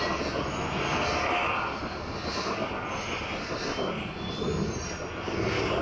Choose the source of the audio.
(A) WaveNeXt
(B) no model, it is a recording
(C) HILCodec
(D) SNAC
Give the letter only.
B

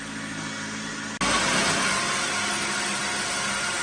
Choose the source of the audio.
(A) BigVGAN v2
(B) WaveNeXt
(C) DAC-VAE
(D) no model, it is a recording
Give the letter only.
D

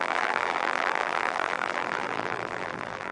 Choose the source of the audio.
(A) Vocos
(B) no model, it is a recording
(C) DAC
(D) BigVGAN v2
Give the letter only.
D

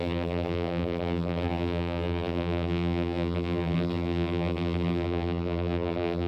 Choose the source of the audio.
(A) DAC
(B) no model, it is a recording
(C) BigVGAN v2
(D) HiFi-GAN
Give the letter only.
C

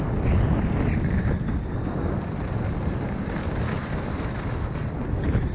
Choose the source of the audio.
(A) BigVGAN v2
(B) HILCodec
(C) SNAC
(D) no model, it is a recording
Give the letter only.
D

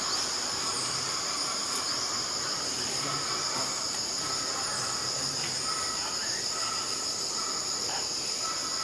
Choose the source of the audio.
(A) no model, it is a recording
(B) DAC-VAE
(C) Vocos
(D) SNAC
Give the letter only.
A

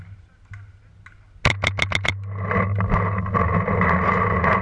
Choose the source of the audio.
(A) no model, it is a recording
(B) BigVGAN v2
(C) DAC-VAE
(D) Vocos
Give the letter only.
A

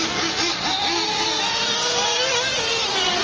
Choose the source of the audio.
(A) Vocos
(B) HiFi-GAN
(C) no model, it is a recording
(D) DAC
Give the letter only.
C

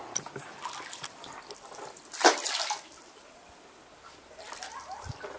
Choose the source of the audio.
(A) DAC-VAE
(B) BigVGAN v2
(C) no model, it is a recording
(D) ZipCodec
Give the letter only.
C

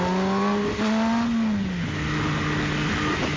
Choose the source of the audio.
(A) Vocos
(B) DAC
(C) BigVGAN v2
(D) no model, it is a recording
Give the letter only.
D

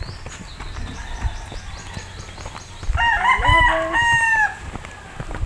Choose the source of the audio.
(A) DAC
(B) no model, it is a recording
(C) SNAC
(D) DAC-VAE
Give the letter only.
B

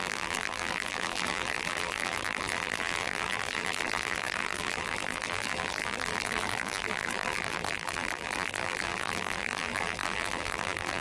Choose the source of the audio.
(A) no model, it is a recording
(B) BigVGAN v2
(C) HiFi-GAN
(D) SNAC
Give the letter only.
B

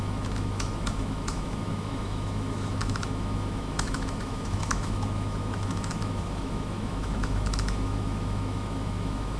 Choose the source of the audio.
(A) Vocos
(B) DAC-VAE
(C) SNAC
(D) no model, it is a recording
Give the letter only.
B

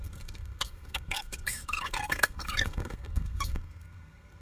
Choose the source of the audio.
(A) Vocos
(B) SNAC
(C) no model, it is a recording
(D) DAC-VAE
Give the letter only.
B